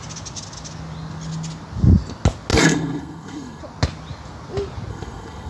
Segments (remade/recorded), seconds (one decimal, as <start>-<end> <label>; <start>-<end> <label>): 0.0-2.5 recorded; 2.5-3.6 remade; 3.6-4.9 recorded; 4.9-5.5 remade